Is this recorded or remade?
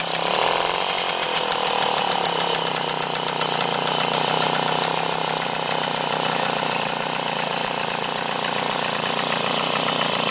recorded